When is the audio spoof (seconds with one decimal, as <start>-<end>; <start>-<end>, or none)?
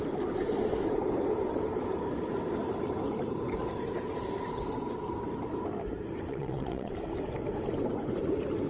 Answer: 6.3-6.9